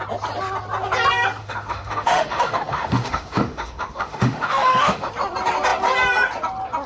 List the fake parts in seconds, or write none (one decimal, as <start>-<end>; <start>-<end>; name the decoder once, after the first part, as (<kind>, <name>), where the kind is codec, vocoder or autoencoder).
1.4-5.1 (autoencoder, DAC-VAE)